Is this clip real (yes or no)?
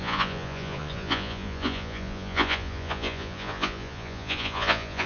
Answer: no